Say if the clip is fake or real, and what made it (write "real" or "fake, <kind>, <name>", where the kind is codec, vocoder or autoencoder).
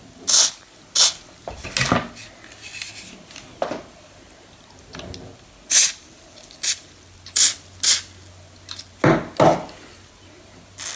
real